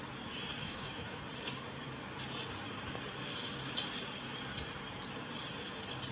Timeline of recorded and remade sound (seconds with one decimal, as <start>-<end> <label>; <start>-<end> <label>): 0.0-0.6 recorded; 0.6-1.2 remade; 1.2-6.1 recorded